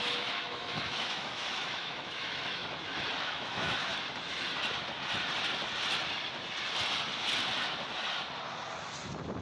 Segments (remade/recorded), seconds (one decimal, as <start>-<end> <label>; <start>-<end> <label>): 0.0-2.6 remade; 2.6-3.2 recorded; 3.2-3.9 remade; 3.9-9.4 recorded